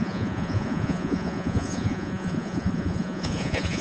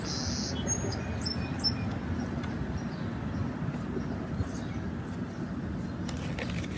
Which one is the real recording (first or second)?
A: second